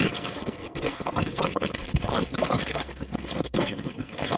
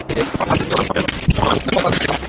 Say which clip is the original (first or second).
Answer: second